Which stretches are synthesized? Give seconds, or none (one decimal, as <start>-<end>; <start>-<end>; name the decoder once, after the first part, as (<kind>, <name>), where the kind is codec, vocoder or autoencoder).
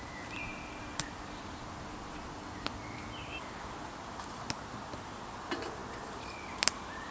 none